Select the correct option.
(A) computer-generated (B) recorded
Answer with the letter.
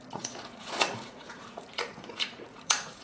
A